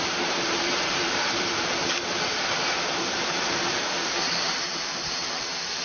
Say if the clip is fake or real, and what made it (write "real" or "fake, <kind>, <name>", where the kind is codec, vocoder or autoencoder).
fake, vocoder, BigVGAN v2